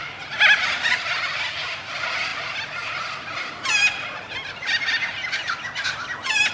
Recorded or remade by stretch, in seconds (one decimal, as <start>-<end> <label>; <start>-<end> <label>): 0.0-6.5 recorded